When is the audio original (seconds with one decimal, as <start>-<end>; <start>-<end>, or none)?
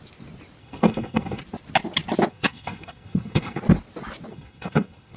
0.0-0.6; 1.4-2.3; 3.6-4.3